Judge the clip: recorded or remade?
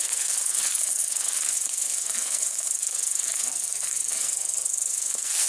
remade